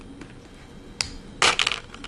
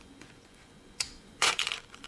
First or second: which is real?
first